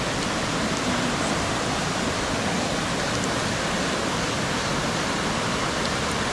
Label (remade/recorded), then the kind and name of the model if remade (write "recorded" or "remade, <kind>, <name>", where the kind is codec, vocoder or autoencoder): recorded